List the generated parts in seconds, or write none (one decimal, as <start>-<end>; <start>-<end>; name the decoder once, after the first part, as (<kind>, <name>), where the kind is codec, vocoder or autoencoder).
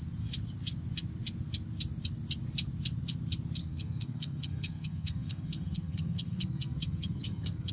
3.6-7.7 (codec, SNAC)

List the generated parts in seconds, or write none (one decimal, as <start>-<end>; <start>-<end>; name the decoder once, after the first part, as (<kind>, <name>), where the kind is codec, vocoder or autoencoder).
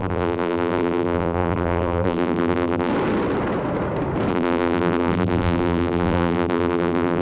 0.0-2.9 (vocoder, BigVGAN v2); 4.3-7.2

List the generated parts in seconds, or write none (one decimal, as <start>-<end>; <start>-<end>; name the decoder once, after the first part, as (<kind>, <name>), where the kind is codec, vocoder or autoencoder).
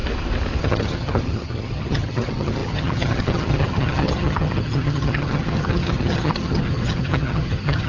0.6-7.9 (vocoder, HiFi-GAN)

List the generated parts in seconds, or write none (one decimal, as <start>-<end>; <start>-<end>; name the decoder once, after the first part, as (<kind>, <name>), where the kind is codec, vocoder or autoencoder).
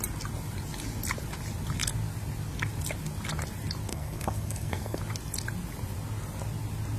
3.9-5.0 (codec, SNAC)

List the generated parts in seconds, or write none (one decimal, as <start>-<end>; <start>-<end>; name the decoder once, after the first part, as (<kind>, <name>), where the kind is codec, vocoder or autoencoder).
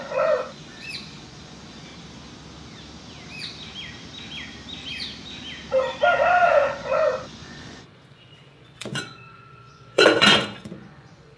0.0-1.9 (vocoder, Vocos); 6.3-11.4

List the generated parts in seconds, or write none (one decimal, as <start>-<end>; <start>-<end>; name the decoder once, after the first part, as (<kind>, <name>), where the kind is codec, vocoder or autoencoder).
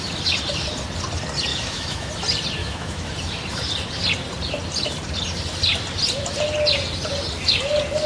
1.5-2.1 (autoencoder, DAC-VAE); 2.6-3.1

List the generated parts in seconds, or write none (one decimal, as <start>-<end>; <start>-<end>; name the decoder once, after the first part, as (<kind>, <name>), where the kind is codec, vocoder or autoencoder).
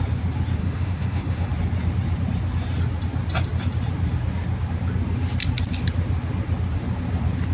0.6-1.5 (autoencoder, DAC-VAE)